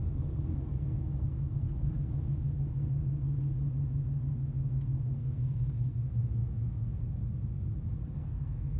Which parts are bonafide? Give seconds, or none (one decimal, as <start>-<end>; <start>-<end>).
3.5-4.3; 7.2-8.1